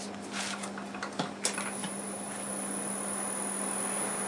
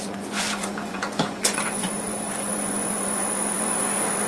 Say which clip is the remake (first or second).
second